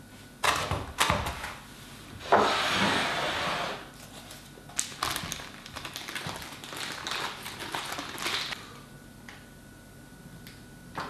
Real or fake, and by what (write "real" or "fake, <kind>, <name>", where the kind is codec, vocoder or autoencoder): real